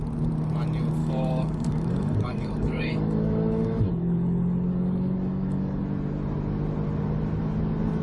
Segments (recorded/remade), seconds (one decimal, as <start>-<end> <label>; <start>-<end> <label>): 0.0-1.0 recorded; 1.0-5.8 remade; 5.8-8.0 recorded